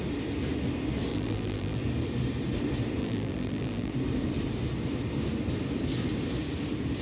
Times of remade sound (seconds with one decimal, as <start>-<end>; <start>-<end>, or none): 1.1-1.8; 3.0-3.9

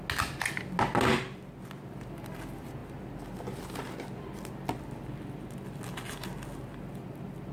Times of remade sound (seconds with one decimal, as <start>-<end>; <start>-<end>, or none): none

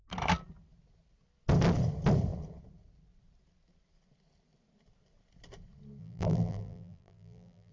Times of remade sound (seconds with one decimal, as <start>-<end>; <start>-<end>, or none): 6.0-7.7

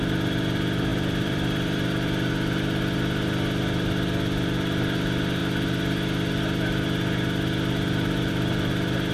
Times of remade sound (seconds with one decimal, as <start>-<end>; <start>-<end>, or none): 0.9-2.3

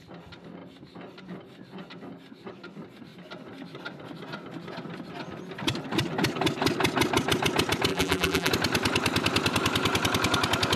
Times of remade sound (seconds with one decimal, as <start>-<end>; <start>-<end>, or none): 7.9-8.5

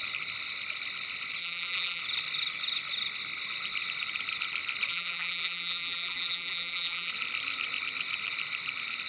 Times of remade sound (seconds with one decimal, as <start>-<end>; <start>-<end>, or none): 1.4-2.0; 4.9-7.1

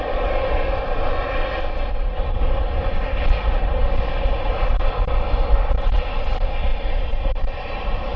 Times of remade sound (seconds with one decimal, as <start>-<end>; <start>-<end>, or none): 6.7-7.2